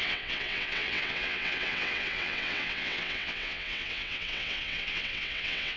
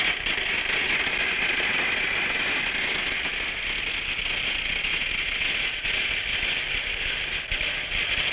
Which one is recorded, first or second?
second